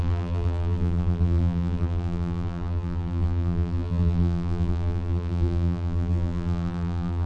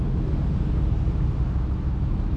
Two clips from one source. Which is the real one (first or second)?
second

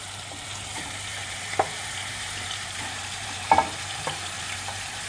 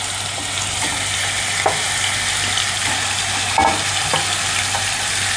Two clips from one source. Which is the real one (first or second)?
second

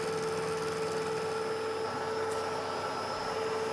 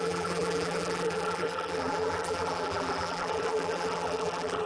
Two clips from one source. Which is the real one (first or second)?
first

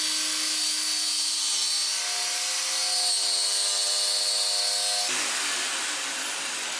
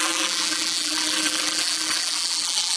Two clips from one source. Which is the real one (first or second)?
first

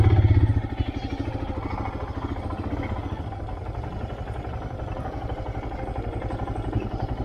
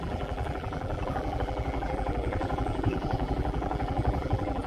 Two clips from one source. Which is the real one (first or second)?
first